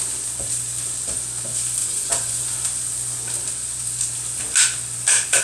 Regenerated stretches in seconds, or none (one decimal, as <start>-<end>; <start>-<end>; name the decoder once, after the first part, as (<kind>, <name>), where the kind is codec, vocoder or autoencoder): 1.8-2.4 (vocoder, Vocos)